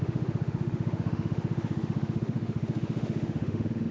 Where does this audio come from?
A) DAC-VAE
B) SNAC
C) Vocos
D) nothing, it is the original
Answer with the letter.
A